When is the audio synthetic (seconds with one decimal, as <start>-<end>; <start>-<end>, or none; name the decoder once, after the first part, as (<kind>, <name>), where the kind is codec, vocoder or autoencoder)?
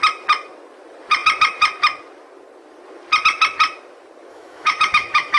4.3-5.4 (autoencoder, DAC-VAE)